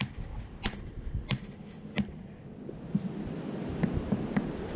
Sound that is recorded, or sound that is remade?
recorded